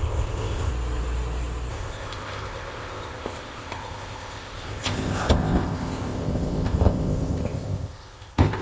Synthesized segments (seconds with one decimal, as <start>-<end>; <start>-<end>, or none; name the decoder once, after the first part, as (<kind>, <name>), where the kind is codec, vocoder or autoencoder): 0.0-0.7 (codec, ZipCodec); 1.7-8.6